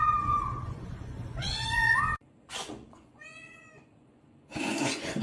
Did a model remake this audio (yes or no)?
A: yes